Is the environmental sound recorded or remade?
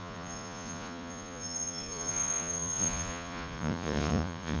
remade